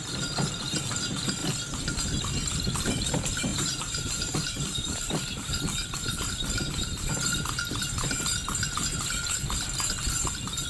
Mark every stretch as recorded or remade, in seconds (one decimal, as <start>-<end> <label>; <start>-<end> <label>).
0.0-3.5 recorded; 3.5-7.1 remade; 7.1-10.7 recorded